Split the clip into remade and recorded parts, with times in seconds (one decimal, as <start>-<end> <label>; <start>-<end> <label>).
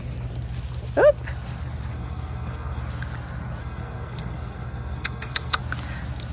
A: 0.0-1.9 recorded; 1.9-2.8 remade; 2.8-3.6 recorded; 3.6-5.6 remade; 5.6-6.3 recorded